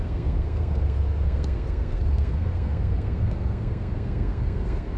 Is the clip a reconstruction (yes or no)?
yes